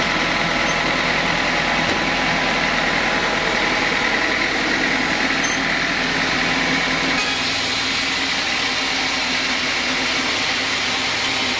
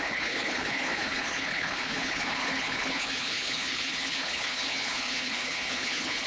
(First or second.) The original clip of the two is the first